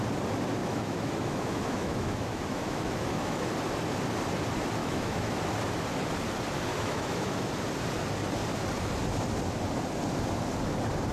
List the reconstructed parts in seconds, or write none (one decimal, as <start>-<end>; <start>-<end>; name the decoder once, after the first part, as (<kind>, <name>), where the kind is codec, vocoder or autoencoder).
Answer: 0.6-3.5 (autoencoder, DAC-VAE); 4.8-5.4; 6.7-7.5